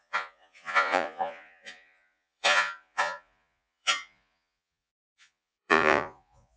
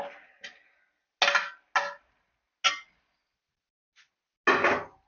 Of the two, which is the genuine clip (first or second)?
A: second